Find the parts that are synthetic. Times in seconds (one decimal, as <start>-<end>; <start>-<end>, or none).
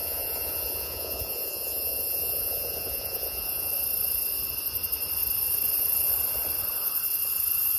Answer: 0.0-3.7